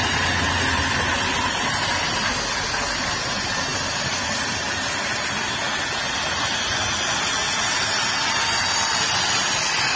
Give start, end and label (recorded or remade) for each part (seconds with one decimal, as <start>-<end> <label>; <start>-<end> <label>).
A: 0.0-10.0 recorded